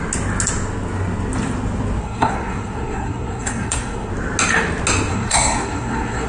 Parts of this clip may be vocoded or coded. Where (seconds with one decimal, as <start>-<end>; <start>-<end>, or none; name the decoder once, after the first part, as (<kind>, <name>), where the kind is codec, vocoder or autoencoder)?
2.0-4.1 (codec, SNAC); 5.1-6.3

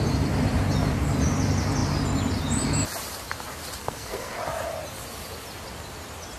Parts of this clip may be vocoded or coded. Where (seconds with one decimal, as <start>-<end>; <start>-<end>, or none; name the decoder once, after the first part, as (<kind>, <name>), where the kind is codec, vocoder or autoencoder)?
3.8-4.4 (codec, SNAC)

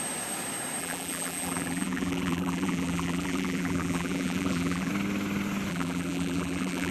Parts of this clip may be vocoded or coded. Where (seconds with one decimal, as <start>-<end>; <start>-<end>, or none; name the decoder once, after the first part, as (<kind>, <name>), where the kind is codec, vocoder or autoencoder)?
0.8-4.9 (vocoder, BigVGAN v2); 5.7-6.9

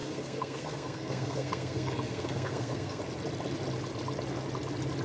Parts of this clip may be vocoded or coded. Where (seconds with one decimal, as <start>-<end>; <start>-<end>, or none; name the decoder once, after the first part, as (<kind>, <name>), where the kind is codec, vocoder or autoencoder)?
0.0-3.0 (codec, SNAC)

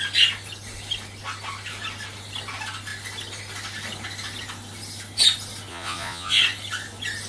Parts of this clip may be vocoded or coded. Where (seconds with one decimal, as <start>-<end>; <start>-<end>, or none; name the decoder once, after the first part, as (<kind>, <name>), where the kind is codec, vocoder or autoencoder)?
5.7-6.4 (vocoder, Vocos)

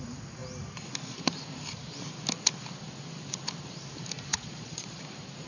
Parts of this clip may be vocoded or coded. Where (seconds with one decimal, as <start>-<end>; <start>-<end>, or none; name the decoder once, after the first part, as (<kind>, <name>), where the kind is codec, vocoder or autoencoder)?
4.3-5.0 (vocoder, Vocos)

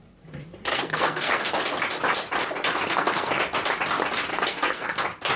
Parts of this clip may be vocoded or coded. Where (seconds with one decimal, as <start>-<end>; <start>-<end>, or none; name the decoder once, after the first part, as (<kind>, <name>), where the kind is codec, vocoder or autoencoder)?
0.7-1.5 (codec, SNAC); 2.8-3.4; 4.3-5.0

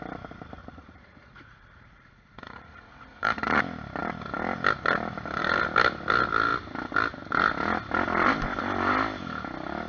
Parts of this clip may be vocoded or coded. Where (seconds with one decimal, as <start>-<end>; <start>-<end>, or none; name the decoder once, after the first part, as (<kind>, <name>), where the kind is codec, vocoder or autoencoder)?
0.6-3.6 (vocoder, Vocos)